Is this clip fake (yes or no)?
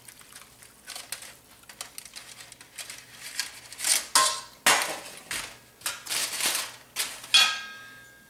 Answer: no